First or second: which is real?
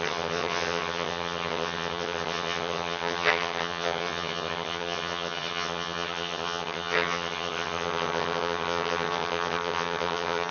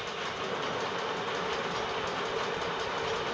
second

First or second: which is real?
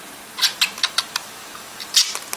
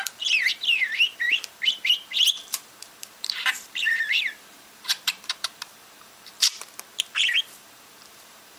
first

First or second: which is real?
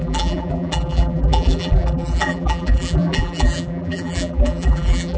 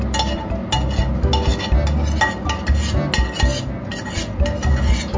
second